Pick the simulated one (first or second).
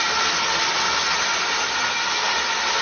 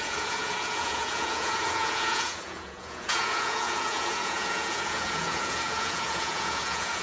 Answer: second